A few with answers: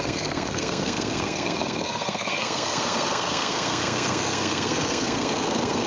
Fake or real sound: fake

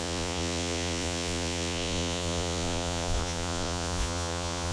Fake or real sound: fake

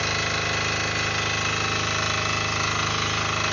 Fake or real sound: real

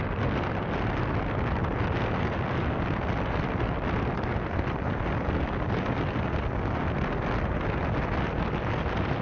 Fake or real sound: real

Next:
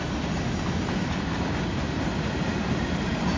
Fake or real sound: real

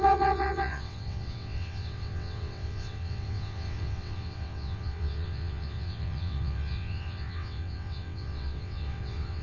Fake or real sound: fake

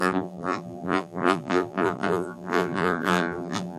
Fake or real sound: fake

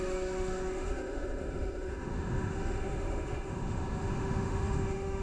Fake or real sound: fake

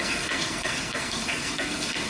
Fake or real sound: fake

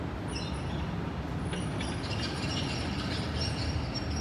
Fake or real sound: real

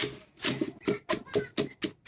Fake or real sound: real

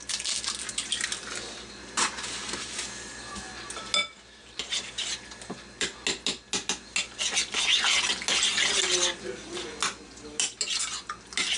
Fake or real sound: real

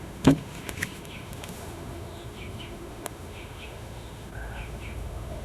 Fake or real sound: fake